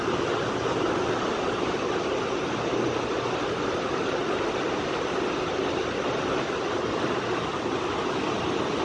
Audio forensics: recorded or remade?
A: recorded